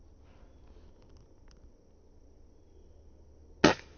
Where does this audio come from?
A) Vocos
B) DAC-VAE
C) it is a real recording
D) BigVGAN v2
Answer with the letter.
C